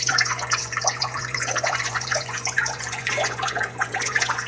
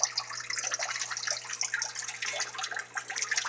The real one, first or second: second